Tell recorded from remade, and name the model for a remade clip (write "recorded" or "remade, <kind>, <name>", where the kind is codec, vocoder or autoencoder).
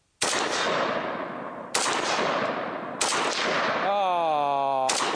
recorded